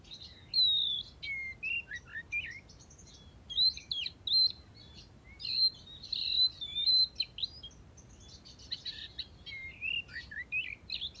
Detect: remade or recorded recorded